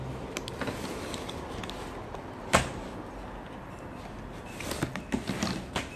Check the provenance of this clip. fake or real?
real